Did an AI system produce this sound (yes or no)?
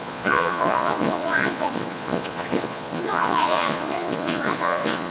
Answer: yes